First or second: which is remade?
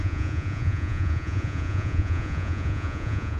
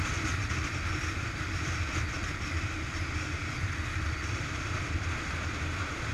first